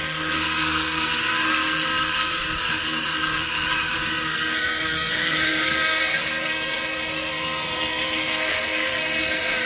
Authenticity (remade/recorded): remade